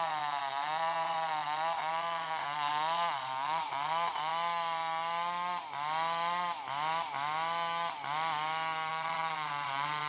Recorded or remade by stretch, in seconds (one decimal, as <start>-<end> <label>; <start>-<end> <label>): 0.0-4.3 remade; 4.3-8.9 recorded; 8.9-10.1 remade